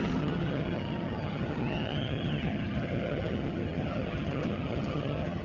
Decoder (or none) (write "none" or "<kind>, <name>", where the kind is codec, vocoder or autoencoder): vocoder, HiFi-GAN